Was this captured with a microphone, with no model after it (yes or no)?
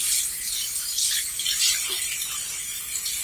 yes